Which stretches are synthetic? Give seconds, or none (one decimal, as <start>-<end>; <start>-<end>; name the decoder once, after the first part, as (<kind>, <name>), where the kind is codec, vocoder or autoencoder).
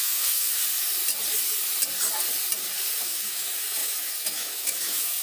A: 0.0-0.6 (autoencoder, DAC-VAE); 3.0-5.2